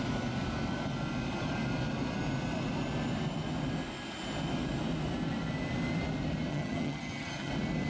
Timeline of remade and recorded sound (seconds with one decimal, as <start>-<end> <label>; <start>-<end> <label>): 0.0-6.5 recorded; 6.5-7.5 remade; 7.5-7.9 recorded